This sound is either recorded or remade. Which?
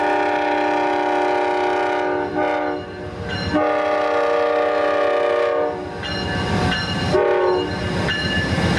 recorded